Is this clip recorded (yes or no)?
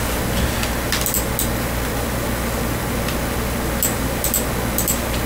yes